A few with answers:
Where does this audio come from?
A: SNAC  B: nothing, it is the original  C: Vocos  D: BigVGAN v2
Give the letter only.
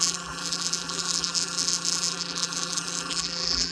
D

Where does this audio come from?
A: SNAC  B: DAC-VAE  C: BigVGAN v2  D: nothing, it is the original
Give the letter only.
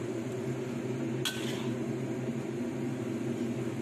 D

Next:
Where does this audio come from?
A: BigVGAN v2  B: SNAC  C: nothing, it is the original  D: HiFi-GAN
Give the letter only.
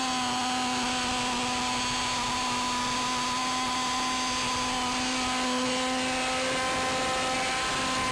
C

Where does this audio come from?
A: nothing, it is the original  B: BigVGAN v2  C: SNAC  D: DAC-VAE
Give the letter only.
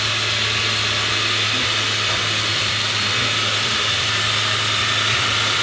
B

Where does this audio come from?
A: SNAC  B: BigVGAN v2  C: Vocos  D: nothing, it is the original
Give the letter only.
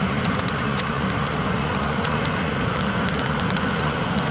C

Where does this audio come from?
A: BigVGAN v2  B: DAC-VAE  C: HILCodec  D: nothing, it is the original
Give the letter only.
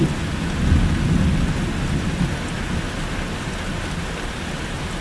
D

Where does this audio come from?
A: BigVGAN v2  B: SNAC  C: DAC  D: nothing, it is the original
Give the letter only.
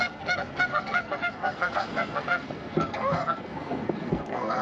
B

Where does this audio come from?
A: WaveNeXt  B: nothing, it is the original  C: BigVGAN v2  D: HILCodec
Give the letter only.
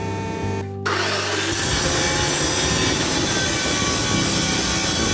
B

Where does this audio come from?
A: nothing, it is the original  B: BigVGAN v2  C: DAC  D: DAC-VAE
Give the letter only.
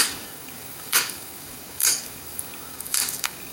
C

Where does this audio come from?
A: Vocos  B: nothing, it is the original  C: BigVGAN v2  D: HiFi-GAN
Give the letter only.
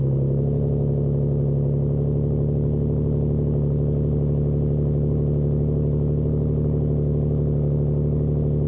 B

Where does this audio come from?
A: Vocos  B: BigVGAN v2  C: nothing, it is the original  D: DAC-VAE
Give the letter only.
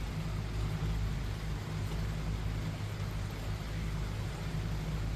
C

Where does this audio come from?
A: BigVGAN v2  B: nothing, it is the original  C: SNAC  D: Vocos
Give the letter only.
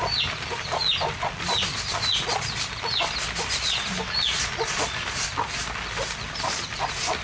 B